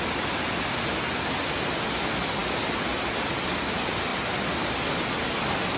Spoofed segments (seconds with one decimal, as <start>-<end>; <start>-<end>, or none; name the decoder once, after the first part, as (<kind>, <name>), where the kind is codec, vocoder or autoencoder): none